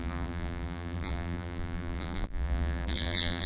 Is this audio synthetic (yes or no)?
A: yes